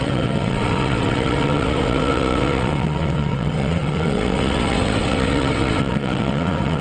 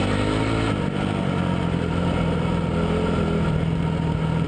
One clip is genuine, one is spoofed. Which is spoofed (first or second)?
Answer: first